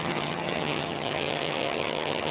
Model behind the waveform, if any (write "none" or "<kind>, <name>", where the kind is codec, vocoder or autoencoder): vocoder, HiFi-GAN